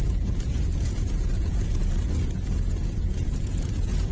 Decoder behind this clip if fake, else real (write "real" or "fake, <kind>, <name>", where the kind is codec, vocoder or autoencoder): fake, vocoder, Vocos